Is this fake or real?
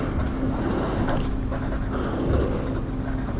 real